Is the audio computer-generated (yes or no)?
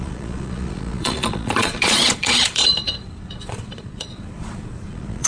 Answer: yes